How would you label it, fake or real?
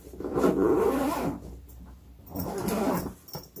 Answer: real